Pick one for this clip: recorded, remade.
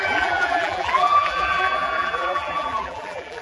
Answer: remade